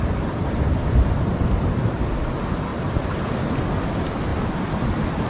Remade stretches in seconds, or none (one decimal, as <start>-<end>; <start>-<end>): 0.4-1.3; 2.7-3.3